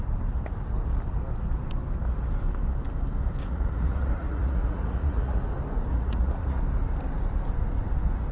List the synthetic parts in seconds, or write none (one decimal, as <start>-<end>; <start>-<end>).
3.4-5.4; 5.9-6.6